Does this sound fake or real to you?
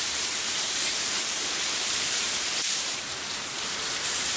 fake